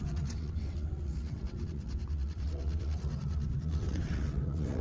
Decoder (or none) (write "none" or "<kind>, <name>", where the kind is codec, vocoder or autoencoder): vocoder, WaveNeXt